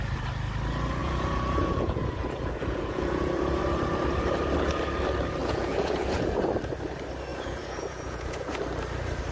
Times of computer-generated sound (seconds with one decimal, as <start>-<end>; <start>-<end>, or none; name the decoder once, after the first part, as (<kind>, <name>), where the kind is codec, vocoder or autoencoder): 1.0-3.6 (vocoder, Vocos); 5.4-6.5; 7.3-8.6